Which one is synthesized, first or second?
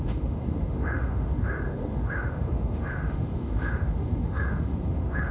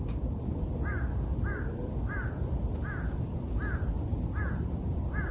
first